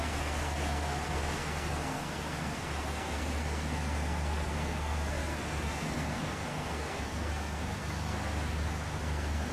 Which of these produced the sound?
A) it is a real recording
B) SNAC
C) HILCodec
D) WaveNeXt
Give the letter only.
B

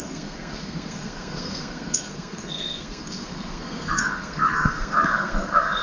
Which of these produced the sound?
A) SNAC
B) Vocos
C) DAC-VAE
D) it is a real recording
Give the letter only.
A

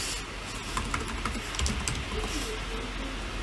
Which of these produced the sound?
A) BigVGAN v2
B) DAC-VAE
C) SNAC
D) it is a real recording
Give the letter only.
D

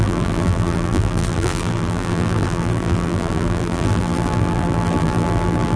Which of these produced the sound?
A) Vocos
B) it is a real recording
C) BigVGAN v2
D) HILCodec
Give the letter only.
C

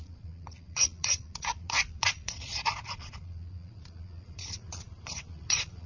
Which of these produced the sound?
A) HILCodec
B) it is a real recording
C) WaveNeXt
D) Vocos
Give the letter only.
D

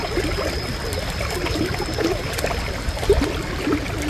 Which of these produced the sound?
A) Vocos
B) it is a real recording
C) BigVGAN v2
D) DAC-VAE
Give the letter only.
B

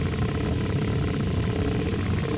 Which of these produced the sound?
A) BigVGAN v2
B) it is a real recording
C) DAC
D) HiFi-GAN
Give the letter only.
B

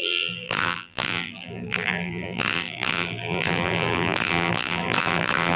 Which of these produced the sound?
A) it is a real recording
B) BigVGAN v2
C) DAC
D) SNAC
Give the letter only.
B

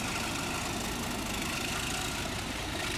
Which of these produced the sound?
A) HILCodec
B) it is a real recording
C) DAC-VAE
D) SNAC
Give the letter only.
B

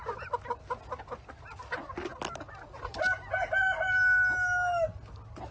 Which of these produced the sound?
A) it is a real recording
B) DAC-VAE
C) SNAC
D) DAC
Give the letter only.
A